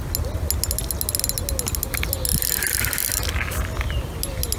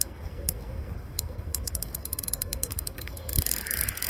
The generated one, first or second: second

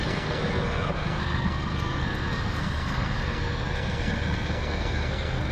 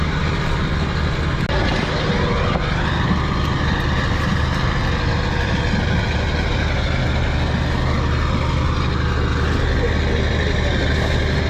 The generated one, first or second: first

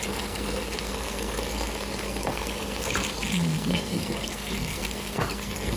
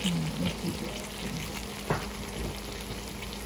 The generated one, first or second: first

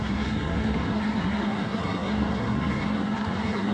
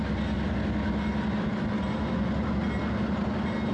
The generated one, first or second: first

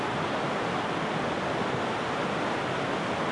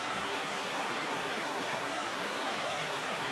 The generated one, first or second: second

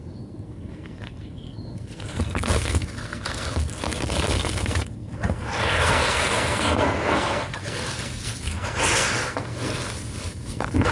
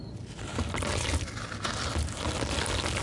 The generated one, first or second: first